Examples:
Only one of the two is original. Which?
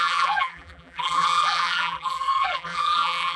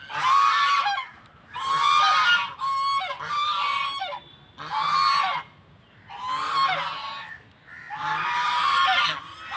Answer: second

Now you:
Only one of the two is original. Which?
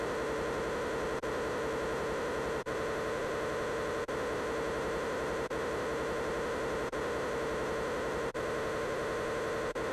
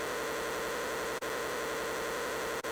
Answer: second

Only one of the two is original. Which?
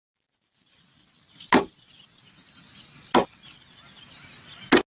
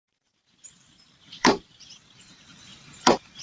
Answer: first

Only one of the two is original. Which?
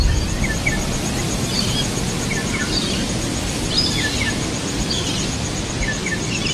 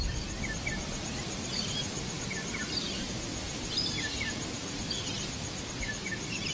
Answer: first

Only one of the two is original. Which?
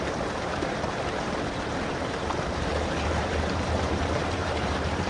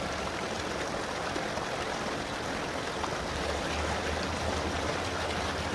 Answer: second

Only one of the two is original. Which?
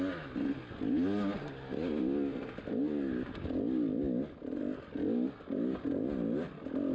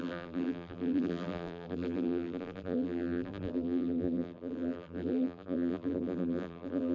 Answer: first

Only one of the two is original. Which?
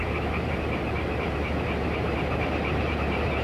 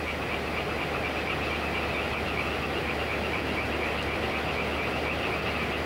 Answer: second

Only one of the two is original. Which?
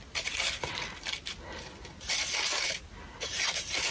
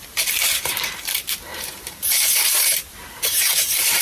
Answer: first